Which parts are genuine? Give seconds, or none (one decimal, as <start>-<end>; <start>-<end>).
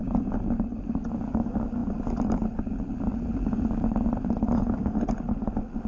0.0-5.9